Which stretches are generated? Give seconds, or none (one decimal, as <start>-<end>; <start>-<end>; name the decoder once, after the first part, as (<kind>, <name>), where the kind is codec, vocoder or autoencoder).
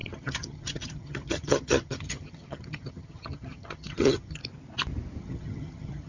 0.0-4.4 (vocoder, HiFi-GAN); 5.2-6.1